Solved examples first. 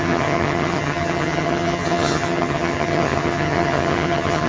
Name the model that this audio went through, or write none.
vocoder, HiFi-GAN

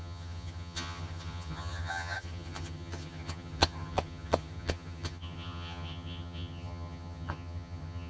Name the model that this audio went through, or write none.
vocoder, HiFi-GAN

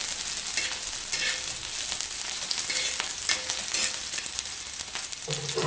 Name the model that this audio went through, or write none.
none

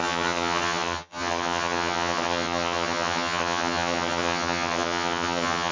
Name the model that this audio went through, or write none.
vocoder, HiFi-GAN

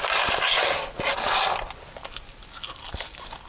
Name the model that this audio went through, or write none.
none